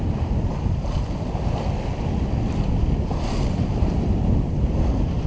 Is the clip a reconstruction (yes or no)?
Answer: no